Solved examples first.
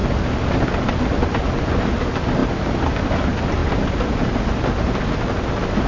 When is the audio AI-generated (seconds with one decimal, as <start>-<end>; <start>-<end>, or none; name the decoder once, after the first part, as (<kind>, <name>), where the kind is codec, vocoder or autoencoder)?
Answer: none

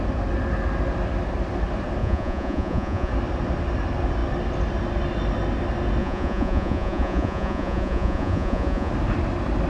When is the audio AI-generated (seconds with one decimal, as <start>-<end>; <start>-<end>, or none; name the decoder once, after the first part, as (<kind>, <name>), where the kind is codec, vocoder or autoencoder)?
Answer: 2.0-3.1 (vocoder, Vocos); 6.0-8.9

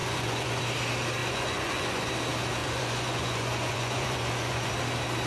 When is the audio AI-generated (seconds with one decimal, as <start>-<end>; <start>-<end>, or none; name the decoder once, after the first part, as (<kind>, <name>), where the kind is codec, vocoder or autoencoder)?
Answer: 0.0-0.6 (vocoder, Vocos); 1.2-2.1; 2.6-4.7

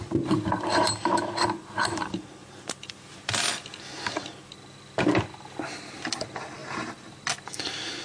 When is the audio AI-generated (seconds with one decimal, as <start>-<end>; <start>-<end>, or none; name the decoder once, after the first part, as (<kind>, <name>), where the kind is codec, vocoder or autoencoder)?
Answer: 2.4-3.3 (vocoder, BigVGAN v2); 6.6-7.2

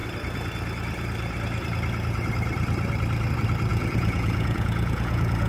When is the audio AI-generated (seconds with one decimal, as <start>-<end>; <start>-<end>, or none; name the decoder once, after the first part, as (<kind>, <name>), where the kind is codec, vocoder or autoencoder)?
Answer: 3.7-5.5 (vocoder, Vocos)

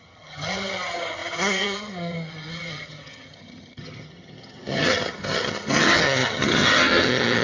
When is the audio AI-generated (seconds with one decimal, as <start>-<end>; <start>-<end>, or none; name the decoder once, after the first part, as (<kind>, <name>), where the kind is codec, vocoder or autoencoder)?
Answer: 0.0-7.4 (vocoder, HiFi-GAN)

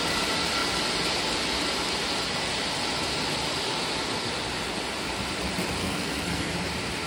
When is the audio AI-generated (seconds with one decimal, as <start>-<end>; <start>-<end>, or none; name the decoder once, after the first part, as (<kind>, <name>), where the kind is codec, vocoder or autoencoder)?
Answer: 5.8-6.5 (codec, SNAC)